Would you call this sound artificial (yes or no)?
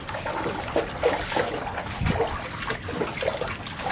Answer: no